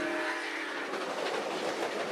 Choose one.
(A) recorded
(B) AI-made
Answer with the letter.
A